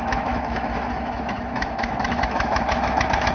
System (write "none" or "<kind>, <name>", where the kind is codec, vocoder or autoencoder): autoencoder, DAC-VAE